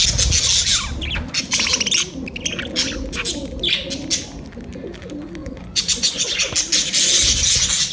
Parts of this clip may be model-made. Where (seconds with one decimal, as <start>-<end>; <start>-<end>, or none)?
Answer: 5.4-6.2